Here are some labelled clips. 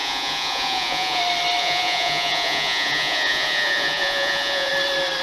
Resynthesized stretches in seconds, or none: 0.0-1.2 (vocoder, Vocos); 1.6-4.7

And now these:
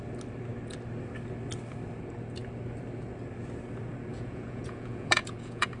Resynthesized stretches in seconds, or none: 4.1-5.8 (vocoder, Vocos)